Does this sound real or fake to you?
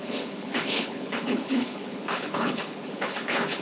fake